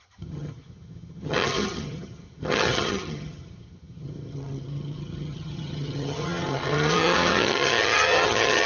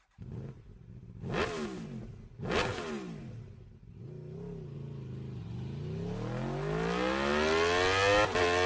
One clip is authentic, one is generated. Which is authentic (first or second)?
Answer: second